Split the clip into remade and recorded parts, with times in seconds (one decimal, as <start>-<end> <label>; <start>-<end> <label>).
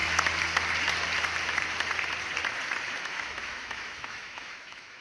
0.0-3.0 recorded; 3.0-5.0 remade